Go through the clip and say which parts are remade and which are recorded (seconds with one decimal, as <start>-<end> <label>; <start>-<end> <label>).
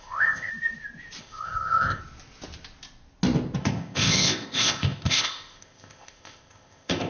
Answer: 0.0-0.5 remade; 0.5-1.2 recorded; 1.2-2.0 remade; 2.0-3.6 recorded; 3.6-7.1 remade